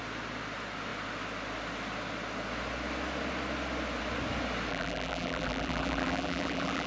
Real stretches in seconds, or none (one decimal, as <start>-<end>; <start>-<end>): 0.0-4.7